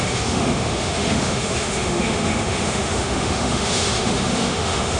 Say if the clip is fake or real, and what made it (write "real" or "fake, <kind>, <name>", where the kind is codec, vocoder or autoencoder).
fake, autoencoder, DAC-VAE